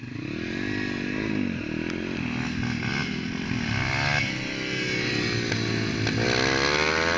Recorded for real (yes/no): yes